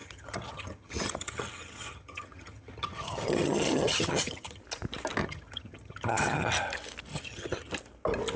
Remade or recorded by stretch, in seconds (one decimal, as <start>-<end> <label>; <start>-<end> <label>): 0.0-4.6 remade; 4.6-5.2 recorded; 5.2-6.5 remade; 6.5-7.1 recorded; 7.1-7.7 remade; 7.7-8.4 recorded